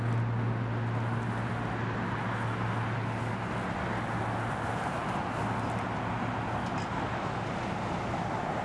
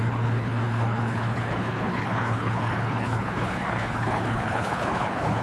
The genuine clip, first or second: first